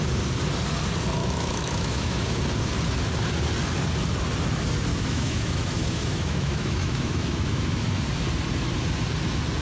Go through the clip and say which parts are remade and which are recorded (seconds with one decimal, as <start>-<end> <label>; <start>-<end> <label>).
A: 0.0-1.2 recorded; 1.2-2.4 remade; 2.4-4.9 recorded; 4.9-8.1 remade; 8.1-9.6 recorded